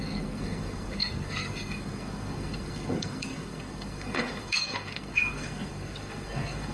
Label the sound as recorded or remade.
remade